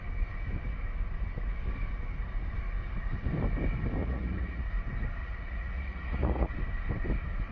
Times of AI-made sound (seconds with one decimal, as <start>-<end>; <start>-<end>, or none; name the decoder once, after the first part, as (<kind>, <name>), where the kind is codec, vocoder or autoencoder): 4.0-4.7 (vocoder, Vocos); 5.2-6.5